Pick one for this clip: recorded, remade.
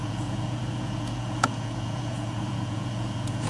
remade